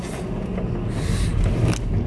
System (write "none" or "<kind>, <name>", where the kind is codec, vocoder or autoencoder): none